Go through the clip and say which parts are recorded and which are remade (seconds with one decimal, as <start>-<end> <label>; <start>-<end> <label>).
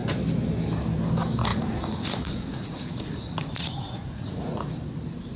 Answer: 0.0-1.5 recorded; 1.5-4.7 remade; 4.7-5.4 recorded